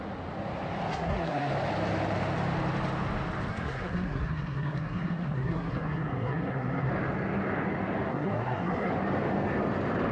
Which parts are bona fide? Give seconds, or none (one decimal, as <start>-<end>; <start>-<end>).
0.0-0.9; 1.5-3.5; 6.9-8.1; 8.9-10.1